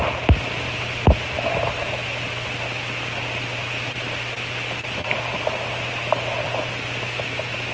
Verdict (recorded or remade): recorded